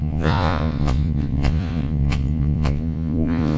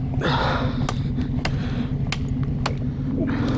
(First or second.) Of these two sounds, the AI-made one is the first